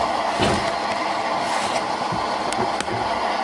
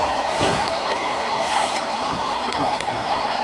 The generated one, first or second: second